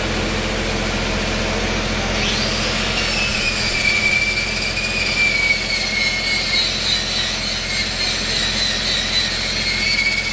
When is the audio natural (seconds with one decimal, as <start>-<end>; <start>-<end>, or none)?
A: 0.0-3.3; 4.2-10.3